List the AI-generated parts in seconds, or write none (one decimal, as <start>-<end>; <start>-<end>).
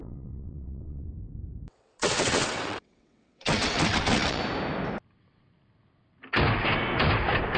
0.0-1.1; 1.7-4.4